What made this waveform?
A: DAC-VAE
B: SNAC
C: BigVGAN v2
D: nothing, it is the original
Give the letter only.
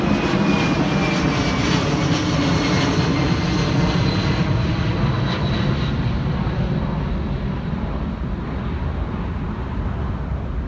D